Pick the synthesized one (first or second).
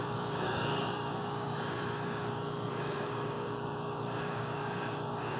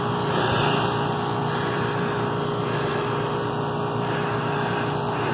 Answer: first